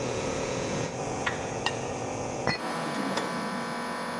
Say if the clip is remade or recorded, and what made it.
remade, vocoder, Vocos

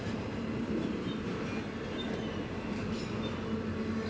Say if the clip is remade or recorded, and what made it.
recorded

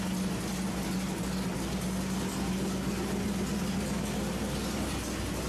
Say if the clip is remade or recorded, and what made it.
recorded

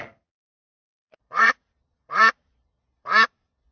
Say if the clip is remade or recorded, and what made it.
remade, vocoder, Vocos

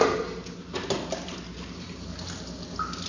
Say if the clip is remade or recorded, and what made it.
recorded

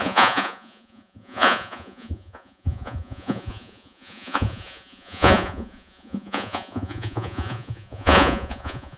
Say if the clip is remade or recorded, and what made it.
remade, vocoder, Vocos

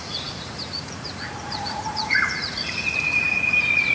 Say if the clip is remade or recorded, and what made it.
remade, vocoder, Vocos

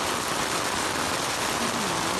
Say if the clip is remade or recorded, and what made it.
recorded